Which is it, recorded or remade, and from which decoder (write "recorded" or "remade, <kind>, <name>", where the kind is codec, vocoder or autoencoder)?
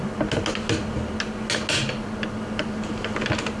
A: recorded